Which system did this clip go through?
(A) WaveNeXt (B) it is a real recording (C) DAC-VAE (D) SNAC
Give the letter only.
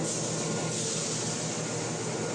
B